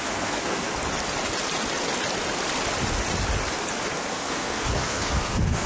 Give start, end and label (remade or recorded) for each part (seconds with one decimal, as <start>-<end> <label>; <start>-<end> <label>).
0.0-0.7 remade; 0.7-4.1 recorded; 4.1-5.7 remade